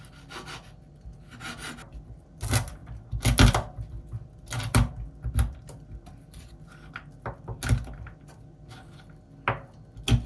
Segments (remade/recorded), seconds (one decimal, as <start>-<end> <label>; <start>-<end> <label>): 0.0-10.3 recorded